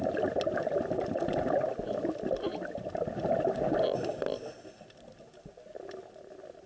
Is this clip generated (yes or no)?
no